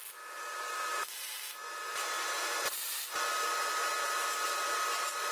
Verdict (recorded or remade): recorded